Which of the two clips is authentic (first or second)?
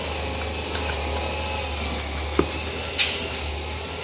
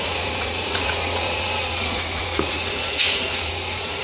first